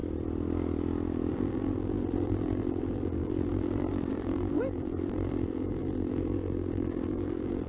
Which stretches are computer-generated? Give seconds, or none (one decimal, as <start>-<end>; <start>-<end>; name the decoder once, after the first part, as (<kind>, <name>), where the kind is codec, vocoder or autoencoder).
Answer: 1.3-7.7 (vocoder, BigVGAN v2)